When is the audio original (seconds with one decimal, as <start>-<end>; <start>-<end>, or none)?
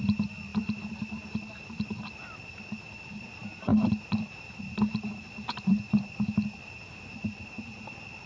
none